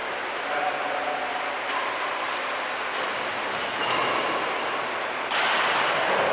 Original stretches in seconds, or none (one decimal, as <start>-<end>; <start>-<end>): 0.0-6.3